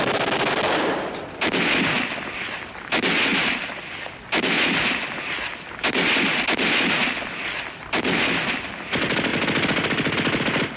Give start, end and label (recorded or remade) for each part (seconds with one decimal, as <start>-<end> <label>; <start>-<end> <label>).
0.0-10.8 recorded